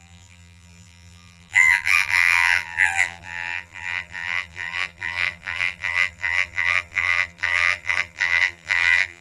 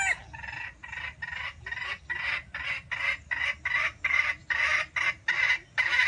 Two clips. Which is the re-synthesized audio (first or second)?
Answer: first